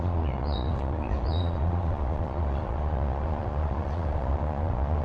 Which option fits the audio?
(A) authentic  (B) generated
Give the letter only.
B